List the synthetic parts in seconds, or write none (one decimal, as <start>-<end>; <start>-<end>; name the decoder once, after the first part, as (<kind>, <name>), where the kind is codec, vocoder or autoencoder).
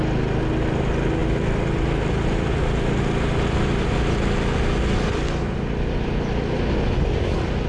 1.2-2.6 (vocoder, BigVGAN v2)